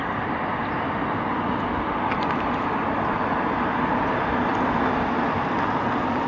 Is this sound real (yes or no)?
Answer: yes